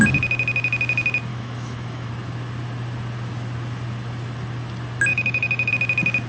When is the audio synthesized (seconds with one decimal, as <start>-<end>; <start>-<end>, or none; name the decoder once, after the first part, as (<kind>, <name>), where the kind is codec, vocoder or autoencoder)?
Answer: 1.3-2.1 (autoencoder, DAC-VAE); 5.1-5.7

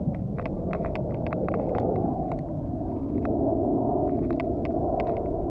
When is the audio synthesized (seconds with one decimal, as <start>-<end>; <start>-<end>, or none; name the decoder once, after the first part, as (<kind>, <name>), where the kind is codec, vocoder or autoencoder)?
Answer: 3.5-4.1 (autoencoder, DAC-VAE)

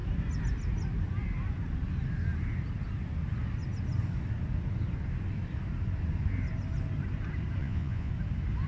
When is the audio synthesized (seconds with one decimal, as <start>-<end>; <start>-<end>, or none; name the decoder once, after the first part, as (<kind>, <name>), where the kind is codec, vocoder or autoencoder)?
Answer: 7.6-8.1 (vocoder, Vocos)

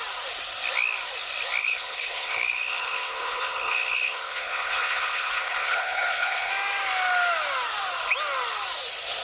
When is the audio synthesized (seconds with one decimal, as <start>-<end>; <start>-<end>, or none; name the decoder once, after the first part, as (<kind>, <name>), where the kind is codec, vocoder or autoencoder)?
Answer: 1.6-6.5 (codec, HILCodec)

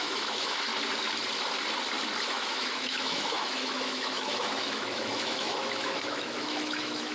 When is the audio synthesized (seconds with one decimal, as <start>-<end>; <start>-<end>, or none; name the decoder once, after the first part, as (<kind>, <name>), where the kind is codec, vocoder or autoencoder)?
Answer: 0.0-0.7 (autoencoder, DAC-VAE); 2.3-7.1

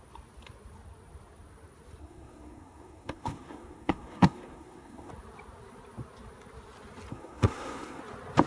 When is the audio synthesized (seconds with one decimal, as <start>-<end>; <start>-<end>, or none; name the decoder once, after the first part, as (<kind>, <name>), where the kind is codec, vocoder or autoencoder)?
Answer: 2.0-5.1 (codec, SNAC); 7.1-8.0